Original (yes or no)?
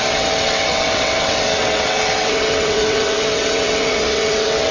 no